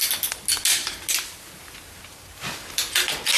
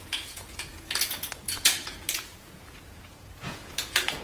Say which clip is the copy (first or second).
second